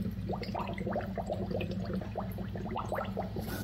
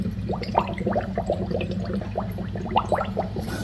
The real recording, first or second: first